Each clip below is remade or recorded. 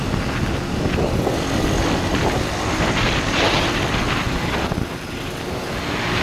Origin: recorded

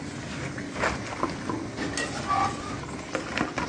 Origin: recorded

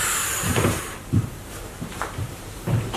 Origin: remade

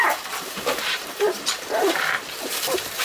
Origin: remade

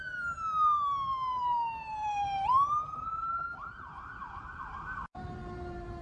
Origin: remade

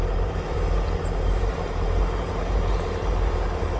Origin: remade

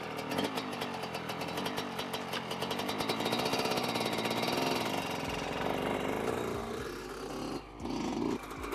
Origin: recorded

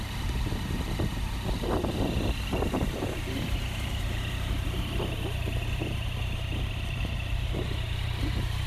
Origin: remade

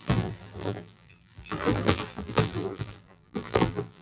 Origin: remade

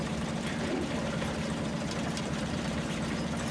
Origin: remade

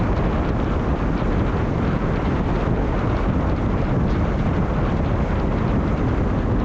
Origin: recorded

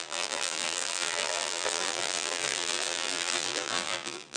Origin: remade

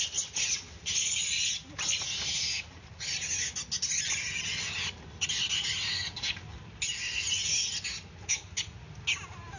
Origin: recorded